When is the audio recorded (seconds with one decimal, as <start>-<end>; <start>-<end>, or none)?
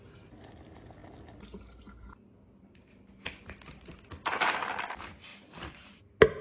0.0-5.3; 6.0-6.4